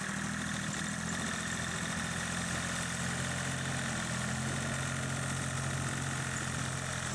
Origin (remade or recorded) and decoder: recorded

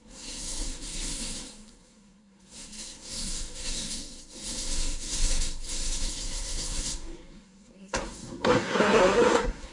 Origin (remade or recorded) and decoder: remade, codec, SNAC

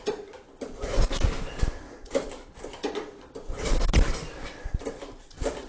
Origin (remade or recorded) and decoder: recorded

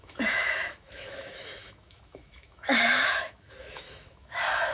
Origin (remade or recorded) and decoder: remade, autoencoder, DAC-VAE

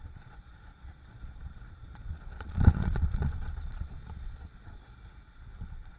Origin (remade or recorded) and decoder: remade, vocoder, Vocos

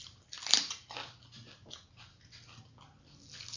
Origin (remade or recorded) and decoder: recorded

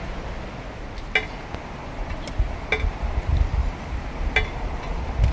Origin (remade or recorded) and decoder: recorded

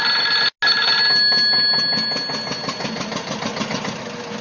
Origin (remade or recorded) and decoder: recorded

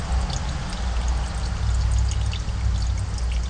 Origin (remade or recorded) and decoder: recorded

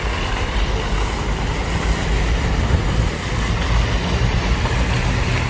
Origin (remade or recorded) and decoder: recorded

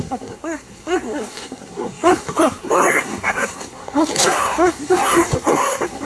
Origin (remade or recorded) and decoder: remade, codec, SNAC